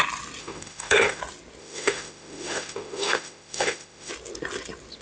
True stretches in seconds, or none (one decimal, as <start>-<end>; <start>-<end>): 0.0-0.4; 1.2-1.6; 4.1-5.0